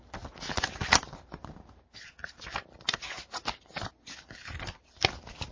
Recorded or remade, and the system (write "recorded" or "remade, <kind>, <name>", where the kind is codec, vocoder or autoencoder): recorded